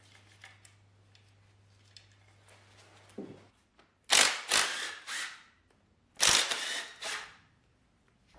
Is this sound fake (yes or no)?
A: no